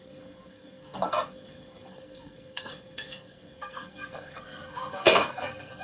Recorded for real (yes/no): no